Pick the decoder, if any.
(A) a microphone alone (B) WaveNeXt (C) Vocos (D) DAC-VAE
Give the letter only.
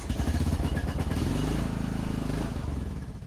D